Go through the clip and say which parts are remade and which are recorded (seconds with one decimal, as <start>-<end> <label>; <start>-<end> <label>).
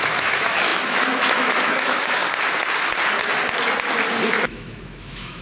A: 0.0-2.2 remade; 2.2-4.4 recorded; 4.4-5.4 remade